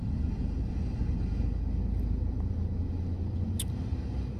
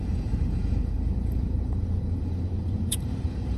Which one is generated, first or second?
second